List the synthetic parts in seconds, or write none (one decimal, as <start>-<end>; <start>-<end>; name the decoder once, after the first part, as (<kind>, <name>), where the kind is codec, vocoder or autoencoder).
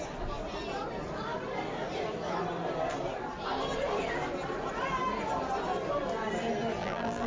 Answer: 6.8-7.3 (vocoder, BigVGAN v2)